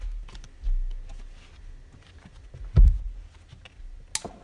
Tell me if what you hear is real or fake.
real